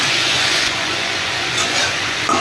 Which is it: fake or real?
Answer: fake